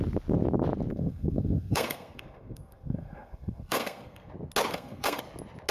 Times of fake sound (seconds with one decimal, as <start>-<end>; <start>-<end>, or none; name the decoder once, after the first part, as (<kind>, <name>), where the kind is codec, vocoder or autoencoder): 0.9-4.3 (codec, SNAC); 4.7-5.2